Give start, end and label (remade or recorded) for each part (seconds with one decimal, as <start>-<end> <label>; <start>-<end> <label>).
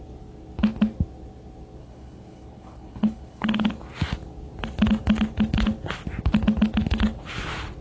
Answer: 0.0-1.8 recorded; 1.8-3.7 remade; 3.7-7.8 recorded